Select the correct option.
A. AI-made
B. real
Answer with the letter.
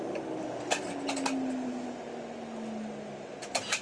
B